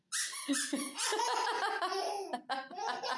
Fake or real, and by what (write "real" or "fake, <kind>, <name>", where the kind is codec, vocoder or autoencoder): real